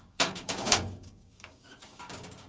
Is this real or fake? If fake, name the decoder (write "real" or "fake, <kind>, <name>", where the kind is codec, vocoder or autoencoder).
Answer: fake, codec, DAC